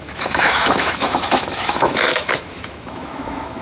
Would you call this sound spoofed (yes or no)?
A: yes